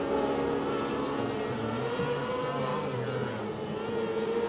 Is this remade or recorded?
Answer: recorded